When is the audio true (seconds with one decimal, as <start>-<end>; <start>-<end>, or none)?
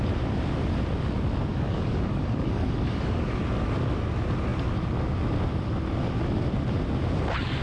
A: 0.0-1.5; 3.4-7.6